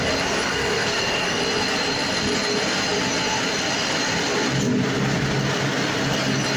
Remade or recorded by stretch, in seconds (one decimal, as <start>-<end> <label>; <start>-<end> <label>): 0.0-0.5 recorded; 0.5-1.4 remade; 1.4-6.6 recorded